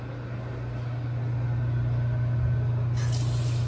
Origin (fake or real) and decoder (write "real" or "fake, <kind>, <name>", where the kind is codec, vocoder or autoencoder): real